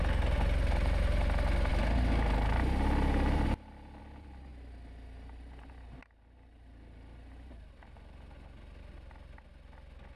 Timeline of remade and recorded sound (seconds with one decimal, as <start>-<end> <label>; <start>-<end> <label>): 0.0-10.2 recorded